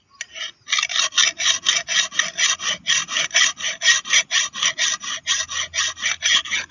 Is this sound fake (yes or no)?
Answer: no